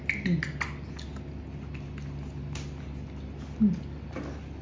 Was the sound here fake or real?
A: real